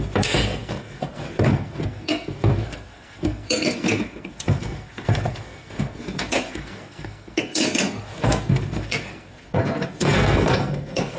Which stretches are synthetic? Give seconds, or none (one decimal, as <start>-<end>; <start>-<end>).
0.0-11.2